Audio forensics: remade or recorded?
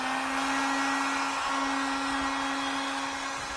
recorded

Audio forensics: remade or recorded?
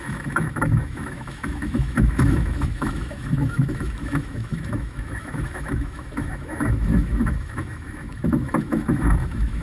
remade